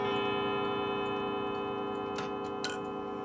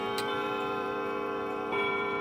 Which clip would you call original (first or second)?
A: first